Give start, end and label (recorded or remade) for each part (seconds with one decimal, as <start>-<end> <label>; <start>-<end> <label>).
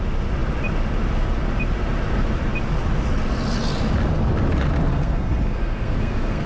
0.0-4.9 recorded; 4.9-6.5 remade